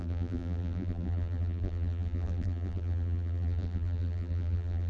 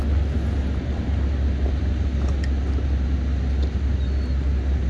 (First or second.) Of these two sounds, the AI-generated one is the first